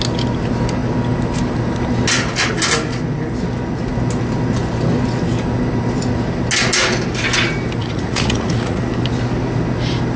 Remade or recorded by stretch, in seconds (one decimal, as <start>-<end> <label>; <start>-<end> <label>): 0.0-7.8 recorded; 7.8-8.9 remade; 8.9-10.2 recorded